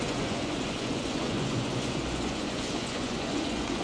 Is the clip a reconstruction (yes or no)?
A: yes